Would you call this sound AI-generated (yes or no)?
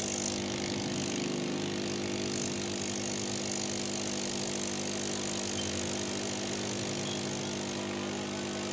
no